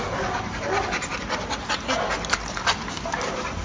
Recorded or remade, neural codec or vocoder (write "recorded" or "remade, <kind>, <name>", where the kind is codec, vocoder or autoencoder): recorded